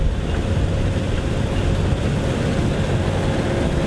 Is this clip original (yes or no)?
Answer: yes